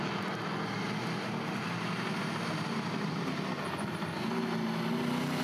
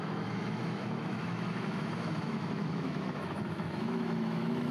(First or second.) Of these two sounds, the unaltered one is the first